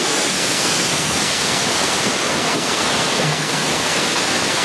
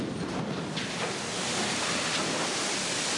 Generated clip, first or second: first